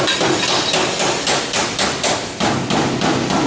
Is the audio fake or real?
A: real